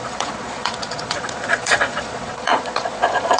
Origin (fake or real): fake